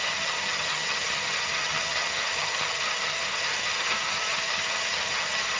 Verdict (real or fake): fake